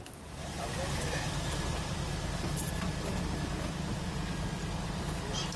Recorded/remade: remade